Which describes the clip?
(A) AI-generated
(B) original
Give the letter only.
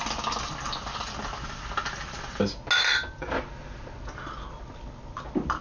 B